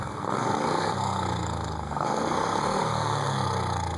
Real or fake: fake